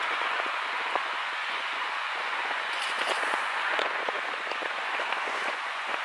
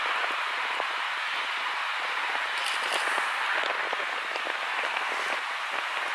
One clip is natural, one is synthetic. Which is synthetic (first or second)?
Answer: first